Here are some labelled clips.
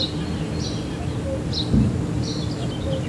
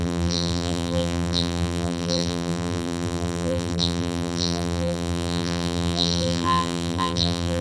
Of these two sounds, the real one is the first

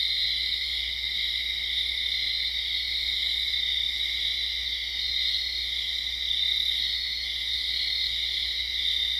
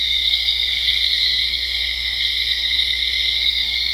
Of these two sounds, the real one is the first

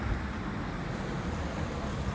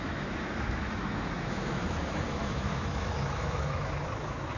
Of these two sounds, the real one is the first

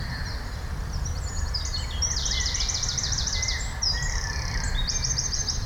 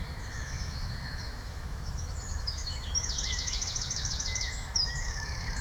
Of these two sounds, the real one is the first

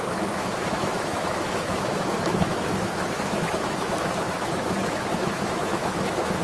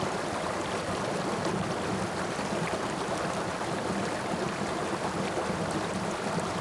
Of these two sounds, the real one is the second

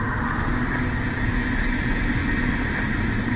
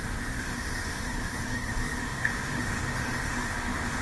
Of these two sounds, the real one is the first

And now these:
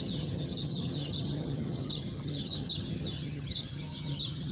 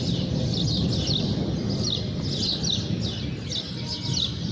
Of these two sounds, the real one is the second